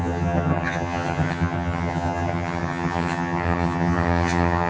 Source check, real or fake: fake